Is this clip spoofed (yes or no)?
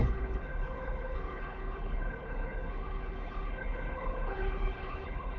yes